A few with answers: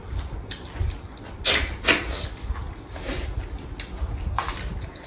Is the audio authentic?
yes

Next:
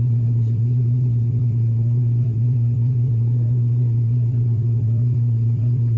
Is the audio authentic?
no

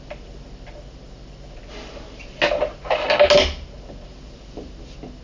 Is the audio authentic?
yes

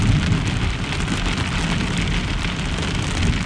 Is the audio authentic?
yes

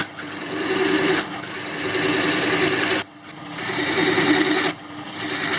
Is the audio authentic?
yes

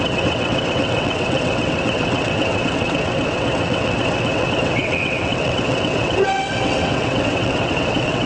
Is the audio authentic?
no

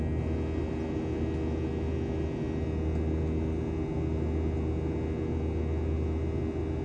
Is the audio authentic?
yes